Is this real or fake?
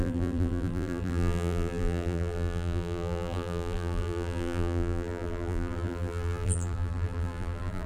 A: fake